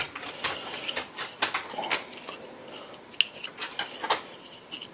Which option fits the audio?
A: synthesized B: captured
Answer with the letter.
B